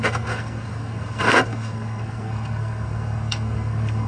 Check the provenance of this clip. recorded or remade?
remade